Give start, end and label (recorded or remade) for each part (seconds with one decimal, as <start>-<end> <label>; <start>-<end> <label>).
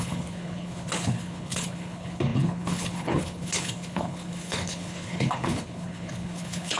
0.0-6.8 remade